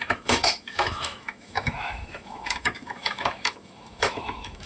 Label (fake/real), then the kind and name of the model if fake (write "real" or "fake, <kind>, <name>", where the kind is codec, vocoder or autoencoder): fake, autoencoder, DAC-VAE